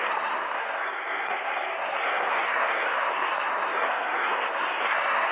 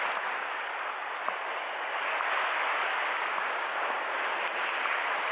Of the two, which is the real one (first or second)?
second